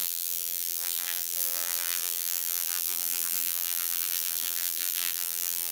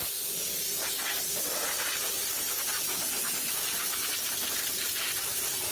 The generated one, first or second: first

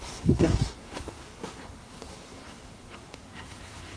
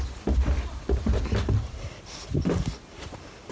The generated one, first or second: first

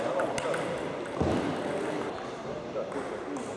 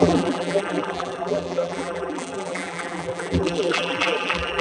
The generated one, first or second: second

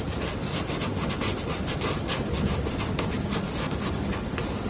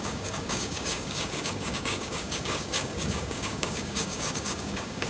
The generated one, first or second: second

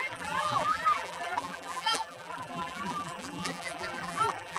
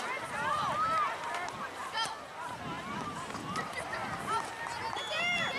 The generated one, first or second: first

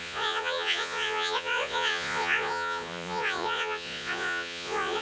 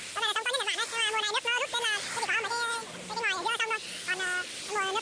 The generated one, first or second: first